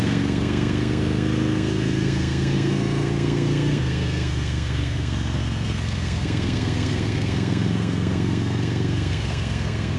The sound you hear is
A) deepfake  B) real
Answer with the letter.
A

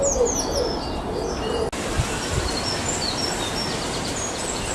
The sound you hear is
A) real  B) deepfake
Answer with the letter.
A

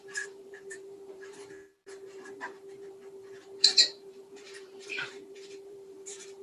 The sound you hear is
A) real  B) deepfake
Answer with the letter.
B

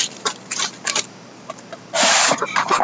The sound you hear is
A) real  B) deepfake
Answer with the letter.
B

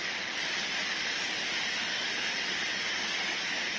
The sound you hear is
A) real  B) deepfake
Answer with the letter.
A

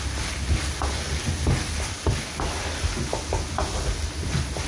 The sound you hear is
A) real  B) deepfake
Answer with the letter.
A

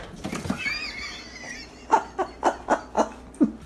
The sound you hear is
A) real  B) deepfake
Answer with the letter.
A